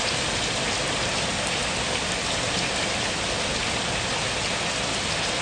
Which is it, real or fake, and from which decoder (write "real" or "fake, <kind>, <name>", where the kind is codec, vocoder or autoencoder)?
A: real